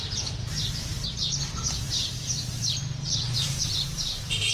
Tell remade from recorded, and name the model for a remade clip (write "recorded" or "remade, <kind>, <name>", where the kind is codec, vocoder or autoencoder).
remade, vocoder, BigVGAN v2